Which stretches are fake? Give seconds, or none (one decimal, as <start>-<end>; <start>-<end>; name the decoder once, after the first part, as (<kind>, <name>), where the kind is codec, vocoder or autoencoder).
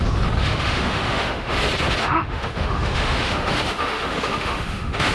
0.4-1.6 (autoencoder, DAC-VAE); 2.0-5.1